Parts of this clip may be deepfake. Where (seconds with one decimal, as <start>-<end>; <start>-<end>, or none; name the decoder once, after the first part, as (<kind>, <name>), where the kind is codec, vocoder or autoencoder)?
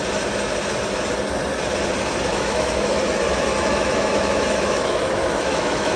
2.3-3.0 (autoencoder, DAC-VAE); 3.5-6.0